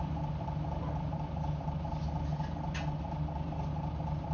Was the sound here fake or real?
real